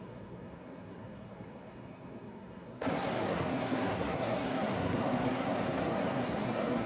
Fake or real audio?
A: fake